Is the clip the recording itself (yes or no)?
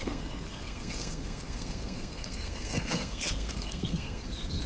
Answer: no